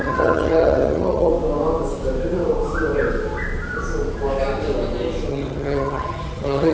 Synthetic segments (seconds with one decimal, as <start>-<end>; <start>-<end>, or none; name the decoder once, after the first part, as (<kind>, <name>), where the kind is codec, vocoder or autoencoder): 0.0-1.3 (vocoder, HiFi-GAN); 5.3-6.7